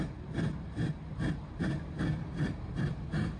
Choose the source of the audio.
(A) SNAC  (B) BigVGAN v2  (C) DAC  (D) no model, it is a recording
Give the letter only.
D